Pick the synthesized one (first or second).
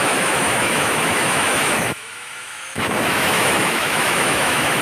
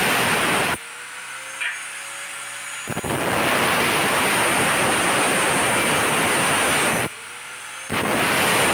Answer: first